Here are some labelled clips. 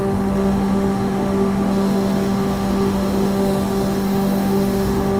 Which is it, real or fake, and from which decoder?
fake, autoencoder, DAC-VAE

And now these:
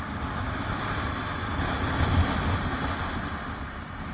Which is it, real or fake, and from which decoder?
real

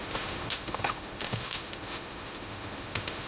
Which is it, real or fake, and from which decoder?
fake, autoencoder, DAC-VAE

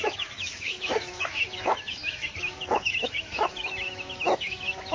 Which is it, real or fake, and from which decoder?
fake, autoencoder, DAC-VAE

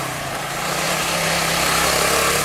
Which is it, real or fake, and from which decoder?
real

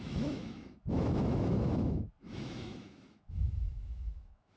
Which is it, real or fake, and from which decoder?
fake, autoencoder, DAC-VAE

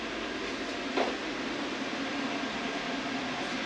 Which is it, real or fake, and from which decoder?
real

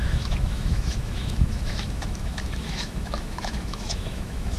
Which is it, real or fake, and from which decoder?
fake, autoencoder, DAC-VAE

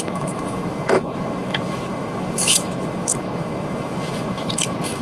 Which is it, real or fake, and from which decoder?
fake, autoencoder, DAC-VAE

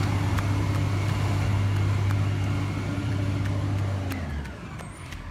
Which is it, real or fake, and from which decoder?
real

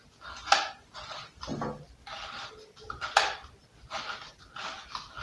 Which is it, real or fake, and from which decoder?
real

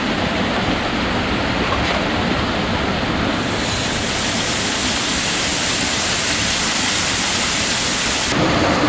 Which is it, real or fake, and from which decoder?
real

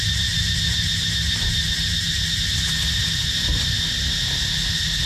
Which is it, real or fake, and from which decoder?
real